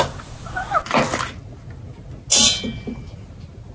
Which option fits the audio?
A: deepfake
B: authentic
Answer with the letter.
B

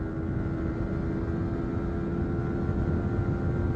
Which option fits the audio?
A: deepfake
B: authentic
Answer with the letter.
B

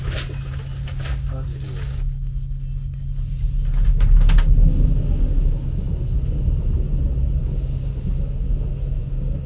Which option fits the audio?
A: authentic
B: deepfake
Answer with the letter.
A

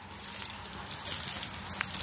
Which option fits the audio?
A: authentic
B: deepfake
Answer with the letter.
A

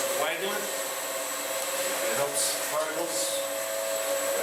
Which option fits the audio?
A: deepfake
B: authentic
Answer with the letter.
B